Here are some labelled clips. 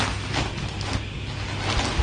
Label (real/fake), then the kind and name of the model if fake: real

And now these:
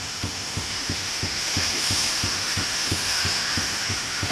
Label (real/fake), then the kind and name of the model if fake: fake, autoencoder, DAC-VAE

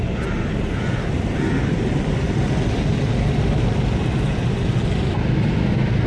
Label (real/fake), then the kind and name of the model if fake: real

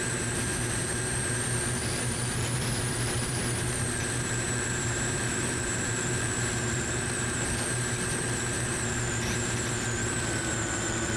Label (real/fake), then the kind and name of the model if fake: fake, vocoder, BigVGAN v2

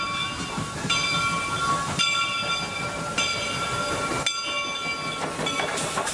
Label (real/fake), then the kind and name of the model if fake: real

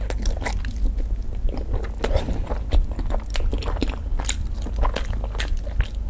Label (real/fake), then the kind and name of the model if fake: real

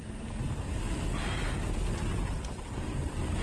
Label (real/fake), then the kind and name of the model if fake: real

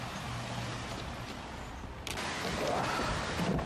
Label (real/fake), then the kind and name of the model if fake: real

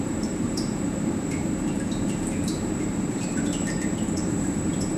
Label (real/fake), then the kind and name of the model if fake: fake, vocoder, BigVGAN v2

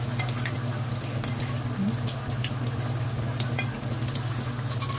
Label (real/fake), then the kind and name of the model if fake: real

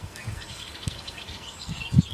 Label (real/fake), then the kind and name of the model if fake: fake, codec, SNAC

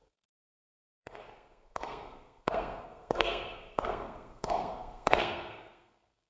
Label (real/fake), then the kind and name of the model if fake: fake, codec, SNAC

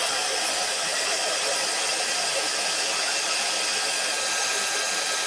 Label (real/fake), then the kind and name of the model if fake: real